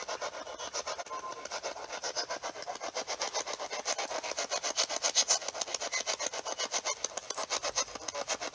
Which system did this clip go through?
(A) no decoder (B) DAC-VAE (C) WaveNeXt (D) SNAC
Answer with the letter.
A